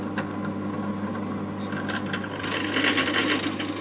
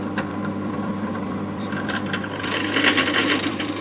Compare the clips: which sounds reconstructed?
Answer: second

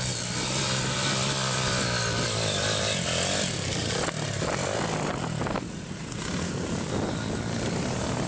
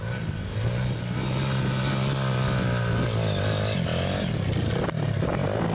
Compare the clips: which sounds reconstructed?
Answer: first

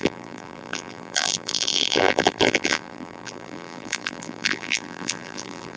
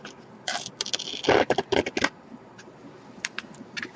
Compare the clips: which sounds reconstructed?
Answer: first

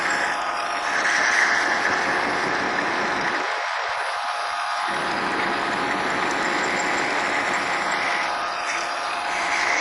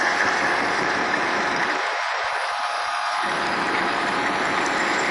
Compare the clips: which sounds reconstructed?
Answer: second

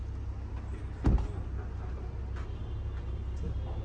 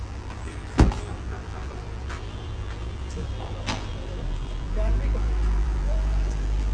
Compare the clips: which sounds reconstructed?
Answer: second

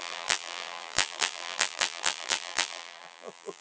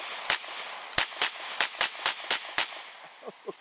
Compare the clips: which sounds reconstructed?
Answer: first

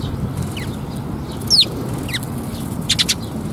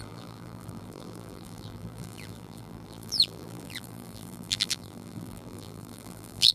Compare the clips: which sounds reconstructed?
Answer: second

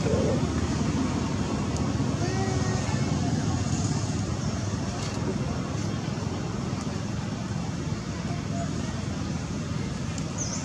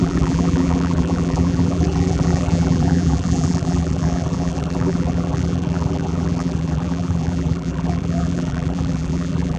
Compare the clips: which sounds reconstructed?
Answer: second